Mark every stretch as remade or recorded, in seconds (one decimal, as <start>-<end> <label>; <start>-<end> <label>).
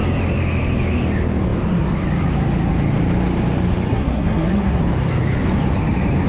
0.0-3.9 recorded; 3.9-4.8 remade; 4.8-6.3 recorded